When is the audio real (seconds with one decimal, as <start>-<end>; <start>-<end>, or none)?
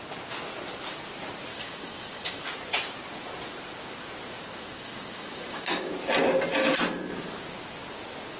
0.0-1.5; 2.4-4.5; 5.9-8.4